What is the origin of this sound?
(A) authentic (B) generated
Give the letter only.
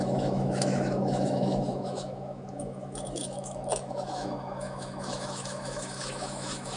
B